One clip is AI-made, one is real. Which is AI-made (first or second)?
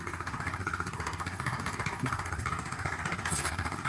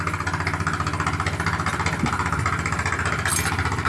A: first